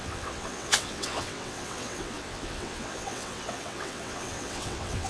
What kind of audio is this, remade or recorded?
remade